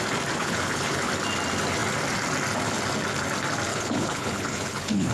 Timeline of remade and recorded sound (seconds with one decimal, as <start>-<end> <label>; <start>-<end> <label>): 0.0-0.4 recorded; 0.4-1.1 remade; 1.1-3.7 recorded; 3.7-5.1 remade